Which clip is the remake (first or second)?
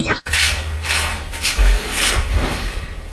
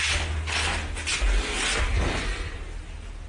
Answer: first